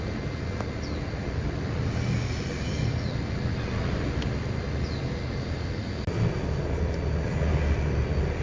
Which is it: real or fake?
real